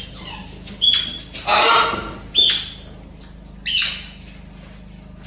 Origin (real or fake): real